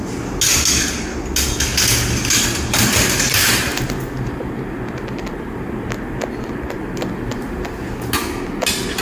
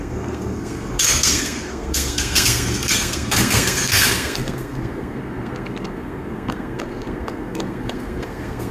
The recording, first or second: first